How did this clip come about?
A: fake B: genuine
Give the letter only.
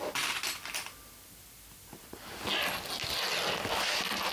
B